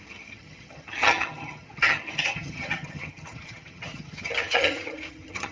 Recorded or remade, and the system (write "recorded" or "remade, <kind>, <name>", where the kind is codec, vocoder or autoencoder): remade, vocoder, HiFi-GAN